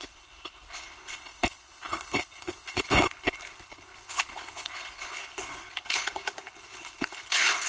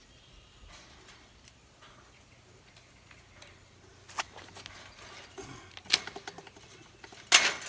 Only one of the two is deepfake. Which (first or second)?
first